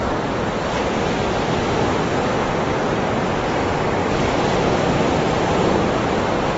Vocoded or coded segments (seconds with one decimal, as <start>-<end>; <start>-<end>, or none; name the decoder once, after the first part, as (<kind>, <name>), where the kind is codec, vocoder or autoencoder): none